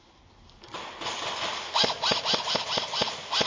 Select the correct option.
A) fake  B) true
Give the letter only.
B